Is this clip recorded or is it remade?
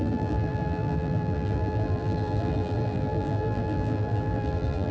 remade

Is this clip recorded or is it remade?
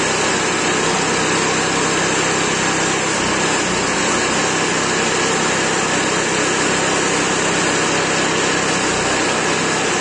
recorded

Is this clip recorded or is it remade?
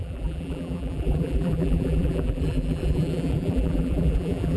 remade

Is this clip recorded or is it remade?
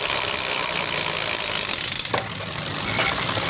recorded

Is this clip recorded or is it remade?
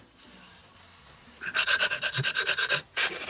remade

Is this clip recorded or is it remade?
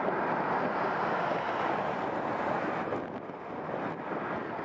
recorded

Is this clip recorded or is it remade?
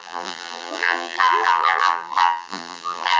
remade